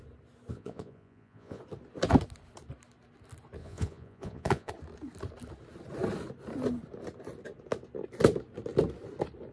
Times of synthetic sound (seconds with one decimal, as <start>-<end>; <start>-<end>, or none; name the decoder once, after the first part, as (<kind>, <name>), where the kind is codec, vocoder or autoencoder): 0.5-1.6 (vocoder, Vocos); 3.6-4.7